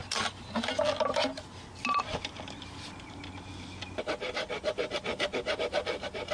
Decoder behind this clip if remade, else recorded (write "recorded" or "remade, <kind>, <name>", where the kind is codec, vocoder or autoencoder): recorded